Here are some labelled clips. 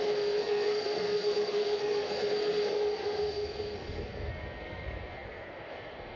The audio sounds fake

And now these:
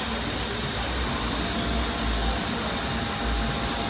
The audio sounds real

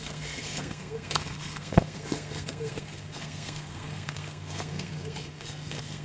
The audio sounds fake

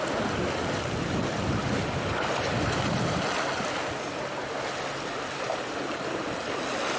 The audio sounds real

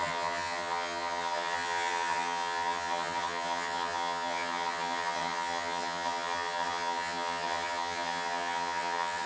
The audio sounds fake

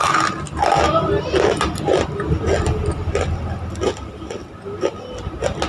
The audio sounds real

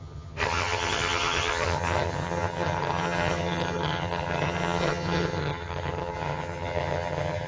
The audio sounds fake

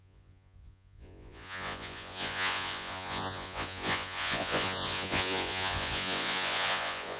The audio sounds fake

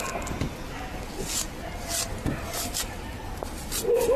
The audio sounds real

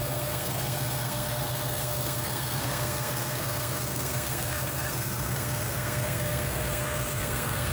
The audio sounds fake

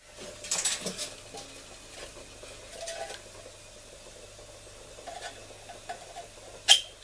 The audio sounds real